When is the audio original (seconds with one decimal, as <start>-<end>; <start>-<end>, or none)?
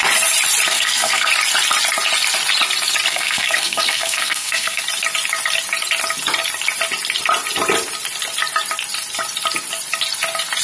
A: 0.0-0.7; 1.3-3.1; 4.8-10.6